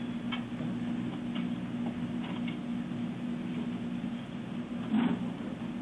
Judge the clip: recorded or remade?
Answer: recorded